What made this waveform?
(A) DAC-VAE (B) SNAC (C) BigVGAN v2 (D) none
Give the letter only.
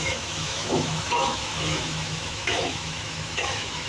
A